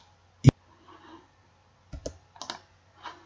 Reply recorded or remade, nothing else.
recorded